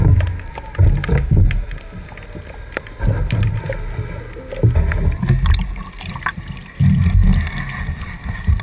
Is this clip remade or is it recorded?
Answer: recorded